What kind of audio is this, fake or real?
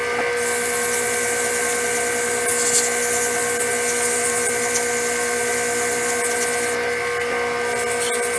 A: real